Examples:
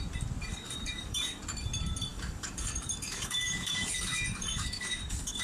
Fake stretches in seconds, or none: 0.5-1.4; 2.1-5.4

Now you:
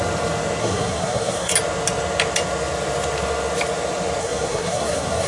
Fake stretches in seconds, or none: 0.6-1.5; 4.2-5.3

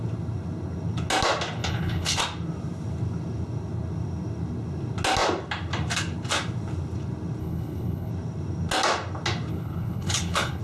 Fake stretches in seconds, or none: 1.6-2.2; 7.4-8.1; 9.5-10.6

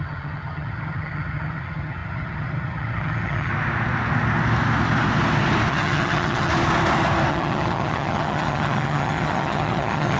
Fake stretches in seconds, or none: 0.0-3.5; 5.7-6.5; 7.3-10.2

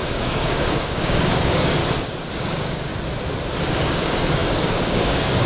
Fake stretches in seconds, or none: 0.0-1.8; 2.3-2.9; 3.6-5.5

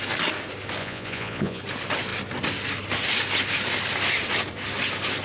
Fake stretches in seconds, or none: 0.8-1.6

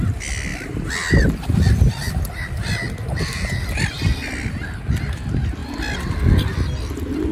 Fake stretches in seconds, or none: none

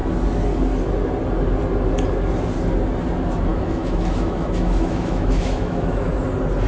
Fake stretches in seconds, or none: 3.5-6.1